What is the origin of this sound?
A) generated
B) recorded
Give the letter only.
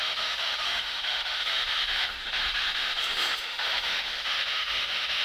A